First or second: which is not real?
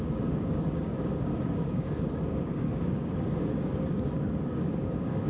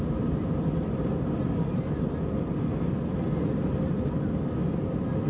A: first